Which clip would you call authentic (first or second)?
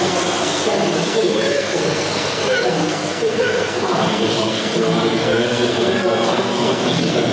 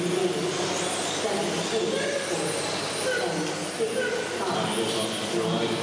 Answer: second